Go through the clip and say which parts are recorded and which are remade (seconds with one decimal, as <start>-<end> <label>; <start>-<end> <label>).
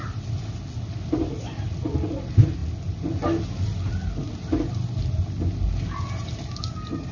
0.0-7.1 recorded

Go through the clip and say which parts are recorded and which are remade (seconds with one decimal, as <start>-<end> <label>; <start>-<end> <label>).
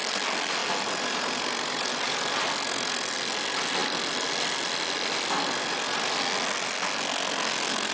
0.0-7.9 recorded